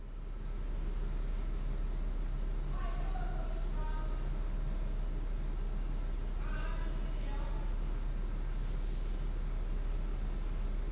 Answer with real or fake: real